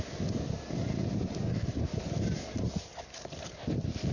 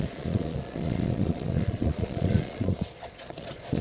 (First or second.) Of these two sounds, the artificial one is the second